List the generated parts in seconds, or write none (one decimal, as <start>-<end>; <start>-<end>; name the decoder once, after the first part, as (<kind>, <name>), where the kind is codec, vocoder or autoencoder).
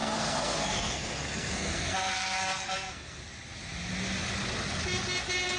0.0-3.2 (codec, SNAC)